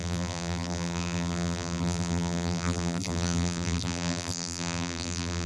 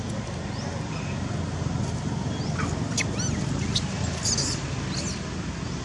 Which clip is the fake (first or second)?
first